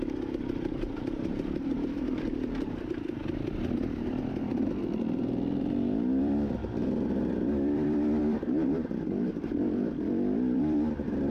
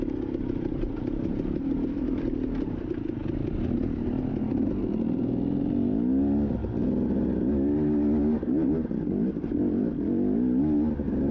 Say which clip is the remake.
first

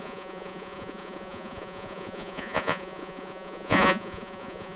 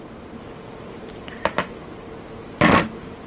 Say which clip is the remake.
first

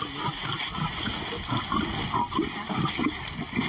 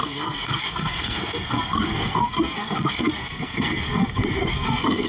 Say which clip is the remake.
second